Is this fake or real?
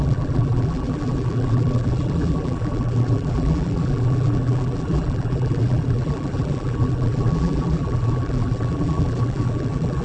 fake